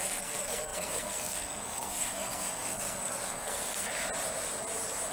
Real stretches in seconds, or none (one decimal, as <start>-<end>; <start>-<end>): 3.9-5.1